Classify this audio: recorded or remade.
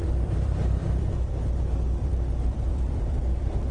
remade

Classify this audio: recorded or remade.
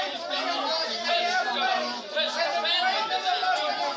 recorded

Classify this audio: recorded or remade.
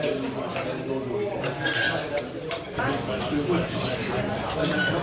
recorded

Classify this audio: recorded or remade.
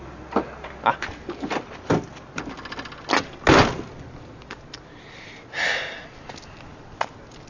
recorded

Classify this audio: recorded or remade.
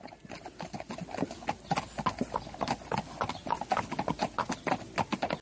recorded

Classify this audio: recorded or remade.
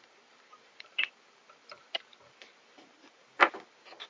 remade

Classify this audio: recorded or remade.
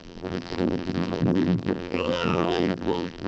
remade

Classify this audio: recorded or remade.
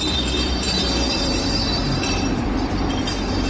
remade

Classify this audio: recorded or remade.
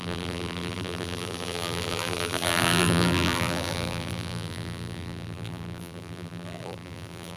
remade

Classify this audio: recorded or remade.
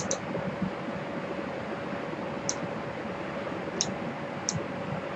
recorded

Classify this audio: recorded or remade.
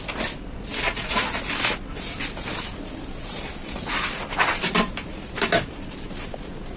recorded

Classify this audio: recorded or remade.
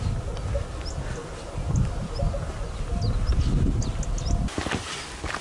recorded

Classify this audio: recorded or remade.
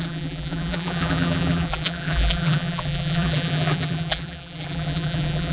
remade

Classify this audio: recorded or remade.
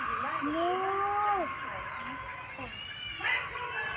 recorded